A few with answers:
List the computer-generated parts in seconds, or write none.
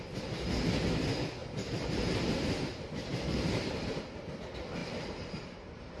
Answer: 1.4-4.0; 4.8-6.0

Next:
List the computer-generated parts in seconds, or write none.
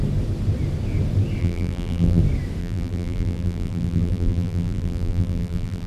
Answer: 1.4-2.2; 2.6-5.9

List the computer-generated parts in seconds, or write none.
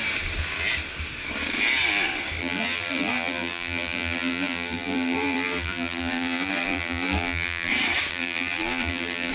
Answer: 2.4-7.7; 8.1-9.3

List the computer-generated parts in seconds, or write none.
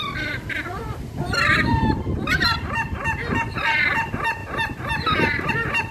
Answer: 0.0-4.4; 5.5-5.9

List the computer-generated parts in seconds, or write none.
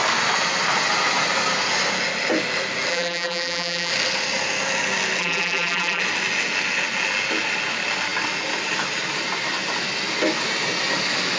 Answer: 2.9-3.9; 5.2-6.0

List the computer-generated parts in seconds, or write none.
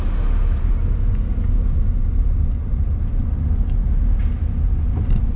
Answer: none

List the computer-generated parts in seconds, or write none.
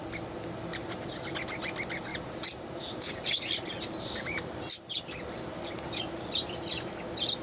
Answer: 0.7-1.3; 2.1-6.5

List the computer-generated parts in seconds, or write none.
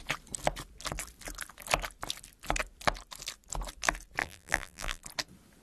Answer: 4.2-5.0